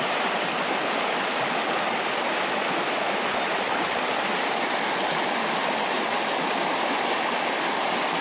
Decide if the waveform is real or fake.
real